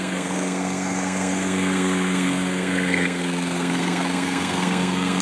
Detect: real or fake fake